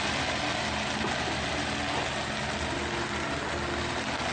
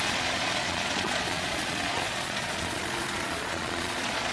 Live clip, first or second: first